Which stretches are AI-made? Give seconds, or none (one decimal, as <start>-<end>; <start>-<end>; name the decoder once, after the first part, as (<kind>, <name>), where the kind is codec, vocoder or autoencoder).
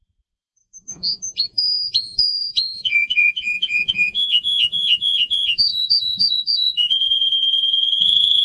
0.0-8.4 (vocoder, Vocos)